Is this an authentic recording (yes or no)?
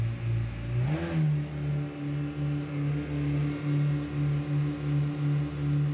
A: yes